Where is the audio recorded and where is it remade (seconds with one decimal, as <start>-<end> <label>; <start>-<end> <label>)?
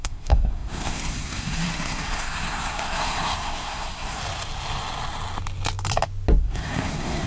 0.0-4.2 remade; 4.2-6.4 recorded; 6.4-7.3 remade